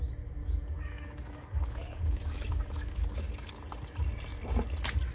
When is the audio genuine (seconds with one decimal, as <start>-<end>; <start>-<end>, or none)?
0.0-0.4; 3.5-5.1

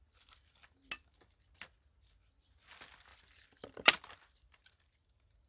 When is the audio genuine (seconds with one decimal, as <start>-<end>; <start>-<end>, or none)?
0.0-3.1; 4.7-5.5

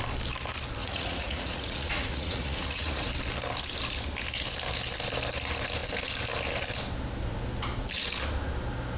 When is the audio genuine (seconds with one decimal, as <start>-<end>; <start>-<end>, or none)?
0.0-0.8; 3.1-9.0

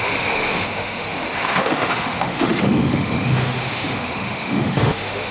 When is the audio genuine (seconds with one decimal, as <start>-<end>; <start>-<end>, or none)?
none

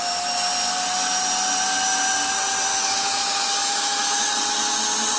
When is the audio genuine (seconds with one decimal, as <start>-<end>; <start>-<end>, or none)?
0.0-2.7; 4.3-5.2